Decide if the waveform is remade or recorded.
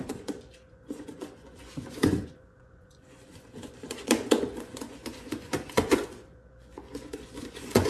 remade